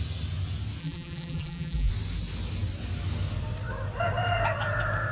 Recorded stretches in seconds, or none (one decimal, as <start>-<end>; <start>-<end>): 0.0-0.8; 1.9-5.1